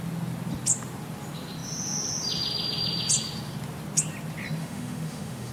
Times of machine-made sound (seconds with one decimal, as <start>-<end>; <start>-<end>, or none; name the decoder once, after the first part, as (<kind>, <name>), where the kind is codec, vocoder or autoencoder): 4.6-5.5 (autoencoder, DAC-VAE)